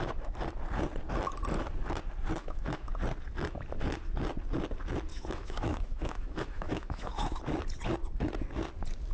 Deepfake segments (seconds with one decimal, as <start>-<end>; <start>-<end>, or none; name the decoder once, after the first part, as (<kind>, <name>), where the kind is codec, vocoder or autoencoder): 2.4-2.9 (autoencoder, DAC-VAE); 5.1-7.4